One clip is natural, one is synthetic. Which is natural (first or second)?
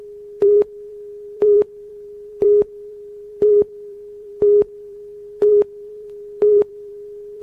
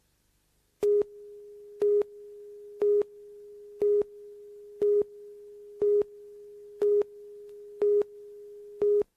second